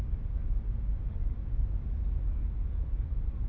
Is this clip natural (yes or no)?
yes